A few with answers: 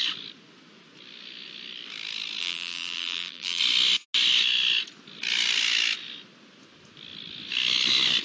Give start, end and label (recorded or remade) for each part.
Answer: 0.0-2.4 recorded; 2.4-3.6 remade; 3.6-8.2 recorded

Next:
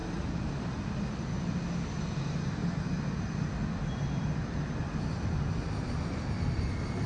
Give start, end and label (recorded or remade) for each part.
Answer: 0.0-7.1 recorded

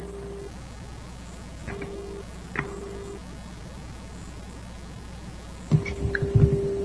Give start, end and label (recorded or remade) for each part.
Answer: 0.0-6.8 recorded

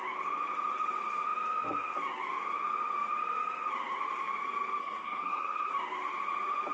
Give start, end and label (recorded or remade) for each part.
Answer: 0.0-4.8 recorded; 4.8-5.7 remade; 5.7-6.7 recorded

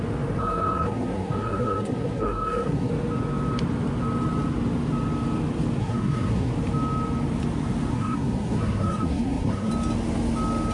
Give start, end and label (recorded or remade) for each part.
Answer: 0.0-0.4 recorded; 0.4-2.9 remade; 2.9-5.8 recorded; 5.8-6.5 remade; 6.5-7.9 recorded; 7.9-9.7 remade; 9.7-10.7 recorded

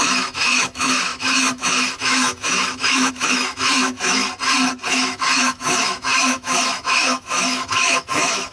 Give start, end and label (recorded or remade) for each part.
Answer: 0.0-4.2 remade; 4.2-4.9 recorded; 4.9-8.5 remade

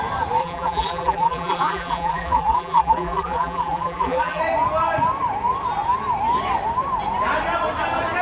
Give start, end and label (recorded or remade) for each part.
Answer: 0.0-0.4 recorded; 0.4-4.4 remade; 4.4-8.2 recorded